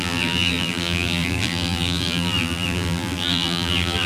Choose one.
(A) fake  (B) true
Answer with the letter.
A